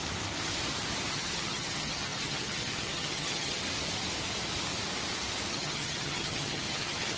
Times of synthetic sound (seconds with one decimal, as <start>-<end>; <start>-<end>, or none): 1.1-3.6; 5.5-7.2